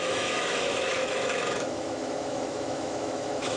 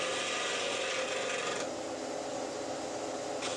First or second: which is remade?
first